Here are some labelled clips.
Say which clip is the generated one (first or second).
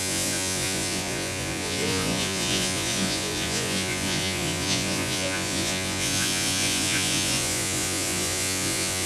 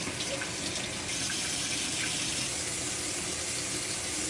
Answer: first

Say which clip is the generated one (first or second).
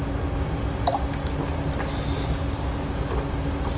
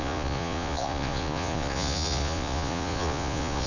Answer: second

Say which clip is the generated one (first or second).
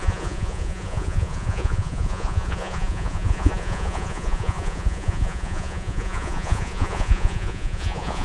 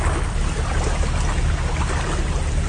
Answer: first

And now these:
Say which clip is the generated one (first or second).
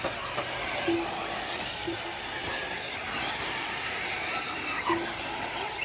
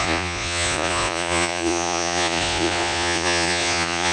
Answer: second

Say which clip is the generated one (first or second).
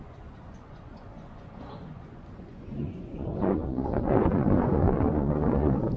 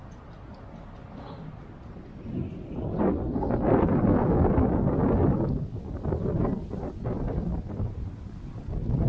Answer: first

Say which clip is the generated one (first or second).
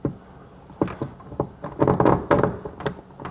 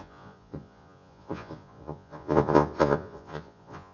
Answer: second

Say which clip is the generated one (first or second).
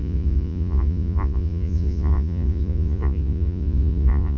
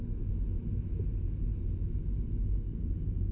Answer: first